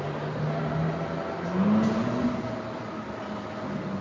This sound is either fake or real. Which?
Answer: real